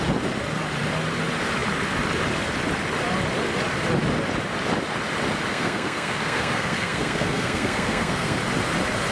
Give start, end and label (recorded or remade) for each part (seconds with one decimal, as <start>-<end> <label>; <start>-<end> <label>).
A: 0.0-5.5 recorded; 5.5-8.4 remade; 8.4-9.1 recorded